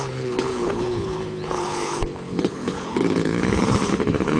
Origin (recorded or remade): remade